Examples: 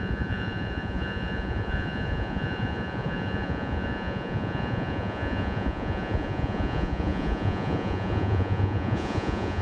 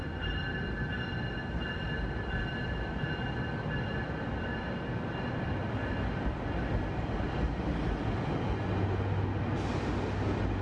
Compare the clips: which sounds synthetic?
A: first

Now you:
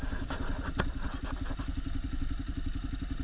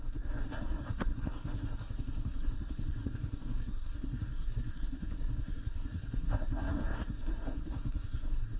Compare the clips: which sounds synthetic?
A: second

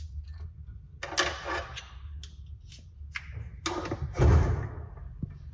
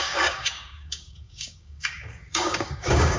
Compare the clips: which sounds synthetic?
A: second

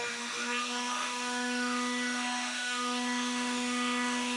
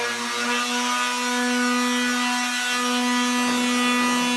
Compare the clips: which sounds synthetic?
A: first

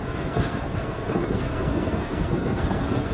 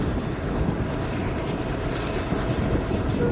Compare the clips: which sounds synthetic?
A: first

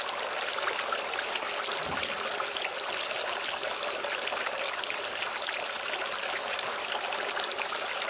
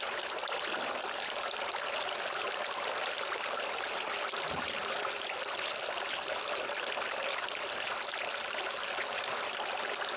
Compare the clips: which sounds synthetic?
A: second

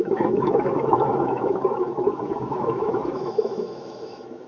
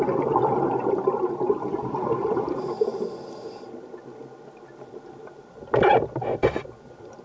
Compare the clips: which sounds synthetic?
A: first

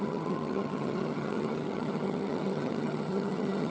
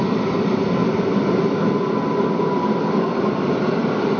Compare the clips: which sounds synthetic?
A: first